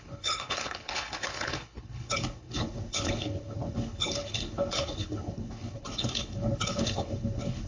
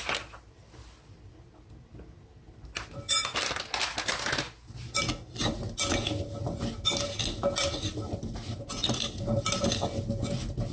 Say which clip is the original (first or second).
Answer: second